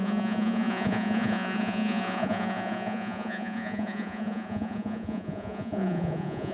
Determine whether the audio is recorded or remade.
remade